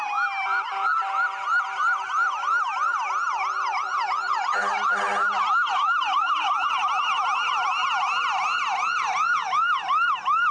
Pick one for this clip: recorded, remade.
recorded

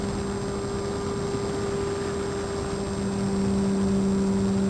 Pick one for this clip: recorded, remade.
recorded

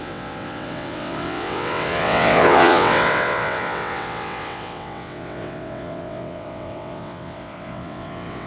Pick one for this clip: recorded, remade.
remade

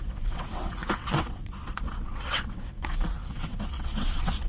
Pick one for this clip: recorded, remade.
remade